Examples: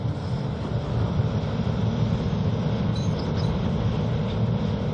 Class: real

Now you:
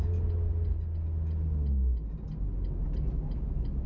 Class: real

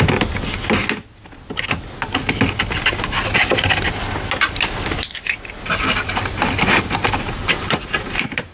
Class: real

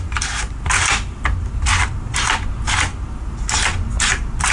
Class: real